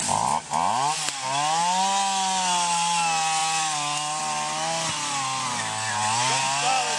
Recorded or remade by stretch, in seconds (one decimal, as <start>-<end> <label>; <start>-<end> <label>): 0.0-7.0 recorded